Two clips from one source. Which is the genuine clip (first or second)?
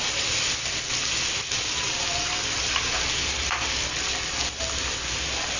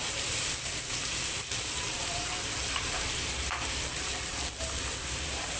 first